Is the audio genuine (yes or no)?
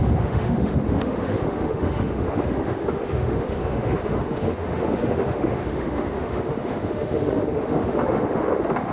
no